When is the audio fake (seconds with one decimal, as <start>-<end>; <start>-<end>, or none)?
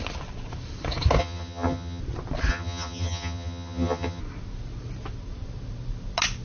1.2-2.0; 2.5-4.2